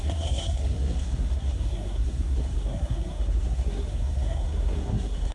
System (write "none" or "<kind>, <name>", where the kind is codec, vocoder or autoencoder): codec, SNAC